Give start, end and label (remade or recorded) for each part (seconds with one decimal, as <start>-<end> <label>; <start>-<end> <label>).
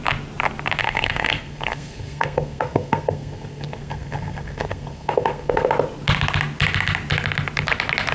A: 0.0-0.8 recorded; 0.8-5.7 remade; 5.7-8.1 recorded